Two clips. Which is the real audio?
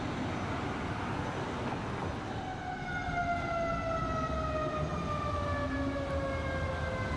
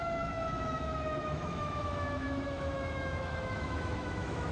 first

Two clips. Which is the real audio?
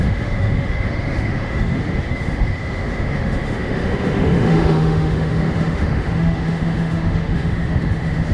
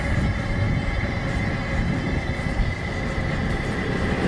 second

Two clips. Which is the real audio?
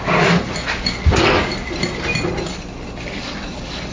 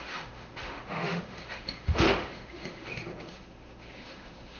first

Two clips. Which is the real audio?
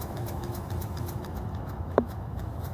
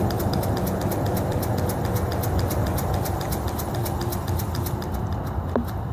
second